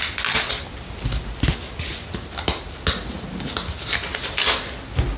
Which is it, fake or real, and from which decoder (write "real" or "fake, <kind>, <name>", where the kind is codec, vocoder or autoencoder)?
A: real